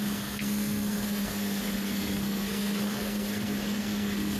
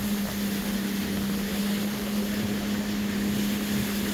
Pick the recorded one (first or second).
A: second